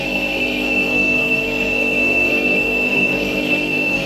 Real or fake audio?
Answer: fake